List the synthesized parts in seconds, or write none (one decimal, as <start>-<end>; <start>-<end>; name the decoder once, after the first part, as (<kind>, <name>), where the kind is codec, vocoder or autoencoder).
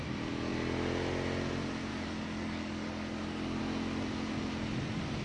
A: 1.9-3.6 (codec, DAC)